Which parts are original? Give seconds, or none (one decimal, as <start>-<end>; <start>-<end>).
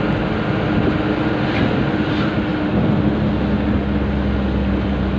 0.0-5.2